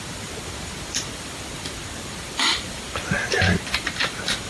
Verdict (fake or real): fake